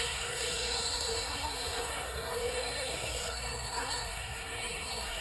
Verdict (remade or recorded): remade